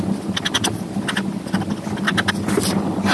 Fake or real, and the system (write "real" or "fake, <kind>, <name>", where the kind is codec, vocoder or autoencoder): real